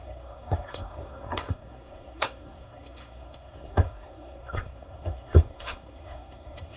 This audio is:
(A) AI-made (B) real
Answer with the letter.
A